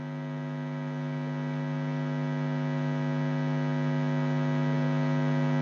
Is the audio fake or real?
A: real